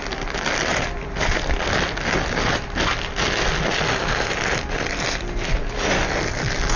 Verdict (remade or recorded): recorded